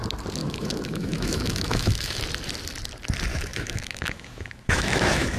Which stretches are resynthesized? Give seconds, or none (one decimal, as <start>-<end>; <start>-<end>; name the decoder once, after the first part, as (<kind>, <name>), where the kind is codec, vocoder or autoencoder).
0.4-2.2 (autoencoder, DAC-VAE); 3.3-5.4